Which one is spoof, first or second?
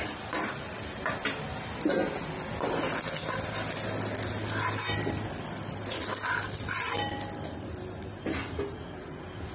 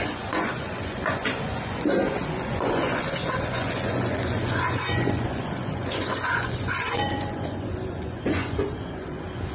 second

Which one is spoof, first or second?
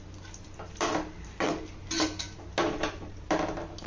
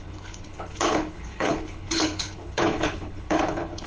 second